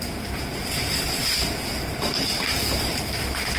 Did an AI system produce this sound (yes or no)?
yes